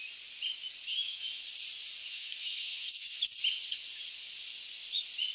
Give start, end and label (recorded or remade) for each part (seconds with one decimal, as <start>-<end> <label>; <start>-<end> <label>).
0.0-0.9 recorded; 0.9-1.4 remade; 1.4-2.0 recorded; 2.0-3.2 remade; 3.2-5.3 recorded